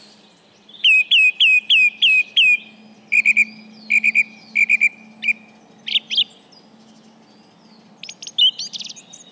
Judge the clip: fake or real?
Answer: real